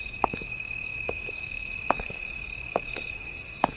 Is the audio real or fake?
fake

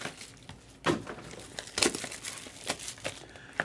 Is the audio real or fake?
real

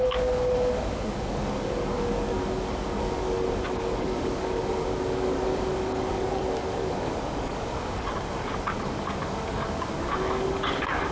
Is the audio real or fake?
fake